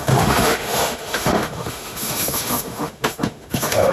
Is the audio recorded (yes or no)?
no